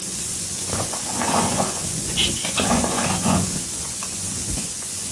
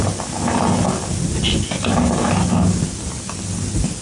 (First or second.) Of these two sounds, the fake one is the first